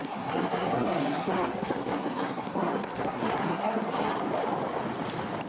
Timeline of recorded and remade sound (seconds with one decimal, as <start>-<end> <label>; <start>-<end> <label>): 0.0-4.1 remade; 4.1-5.5 recorded